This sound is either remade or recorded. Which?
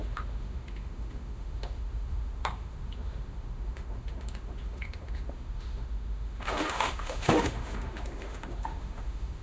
remade